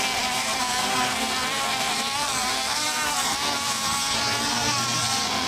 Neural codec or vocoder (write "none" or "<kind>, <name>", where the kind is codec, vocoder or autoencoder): codec, SNAC